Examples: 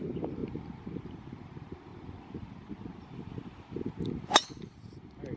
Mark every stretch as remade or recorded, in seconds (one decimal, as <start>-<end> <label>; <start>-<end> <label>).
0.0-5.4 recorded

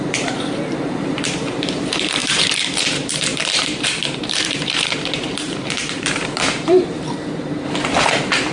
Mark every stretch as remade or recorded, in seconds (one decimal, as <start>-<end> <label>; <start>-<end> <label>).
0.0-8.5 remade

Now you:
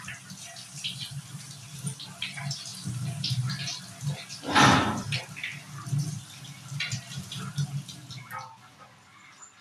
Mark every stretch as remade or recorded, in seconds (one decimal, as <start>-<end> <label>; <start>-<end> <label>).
0.0-9.6 recorded

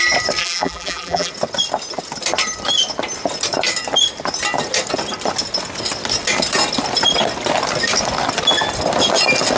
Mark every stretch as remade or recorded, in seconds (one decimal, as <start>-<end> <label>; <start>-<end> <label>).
0.0-0.4 recorded; 0.4-1.3 remade; 1.3-9.6 recorded